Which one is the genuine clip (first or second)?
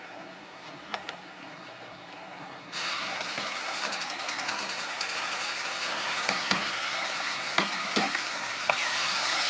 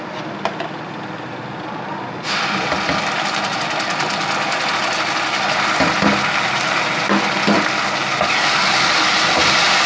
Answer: second